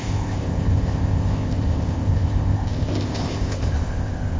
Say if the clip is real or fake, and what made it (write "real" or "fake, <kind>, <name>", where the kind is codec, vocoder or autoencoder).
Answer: fake, codec, ZipCodec